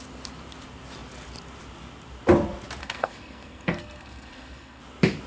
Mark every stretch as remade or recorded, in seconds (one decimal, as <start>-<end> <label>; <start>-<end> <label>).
0.0-2.8 recorded; 2.8-4.8 remade; 4.8-5.3 recorded